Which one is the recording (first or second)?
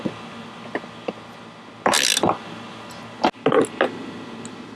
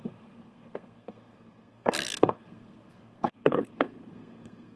first